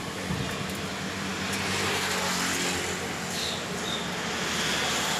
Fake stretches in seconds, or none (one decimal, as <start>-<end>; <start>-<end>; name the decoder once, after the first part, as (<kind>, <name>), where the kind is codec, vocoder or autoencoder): none